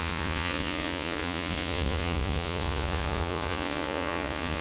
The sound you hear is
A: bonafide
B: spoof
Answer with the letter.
B